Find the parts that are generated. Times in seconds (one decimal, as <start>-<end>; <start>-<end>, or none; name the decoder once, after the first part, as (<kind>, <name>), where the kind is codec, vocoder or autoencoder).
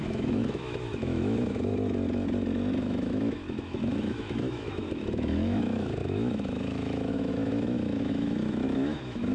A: 0.0-1.7 (autoencoder, DAC-VAE); 2.8-9.3